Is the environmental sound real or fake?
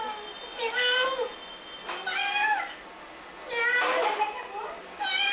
real